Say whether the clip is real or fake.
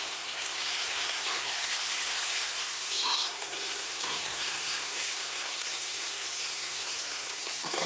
fake